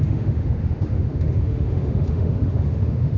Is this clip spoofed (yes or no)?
yes